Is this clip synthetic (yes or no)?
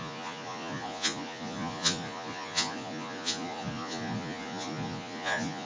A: yes